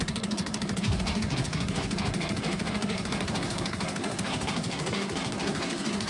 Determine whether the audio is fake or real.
fake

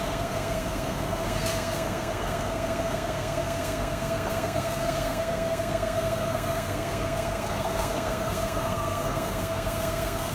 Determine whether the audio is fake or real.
fake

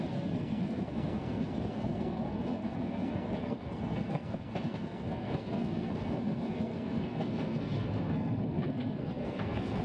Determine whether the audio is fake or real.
fake